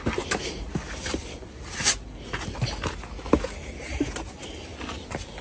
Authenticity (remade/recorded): recorded